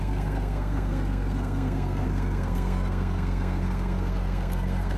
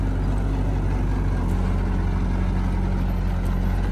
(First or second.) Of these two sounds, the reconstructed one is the first